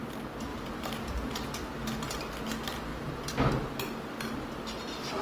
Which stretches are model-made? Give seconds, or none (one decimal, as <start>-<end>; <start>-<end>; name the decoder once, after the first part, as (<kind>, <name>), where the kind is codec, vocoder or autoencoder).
0.5-2.5 (vocoder, BigVGAN v2)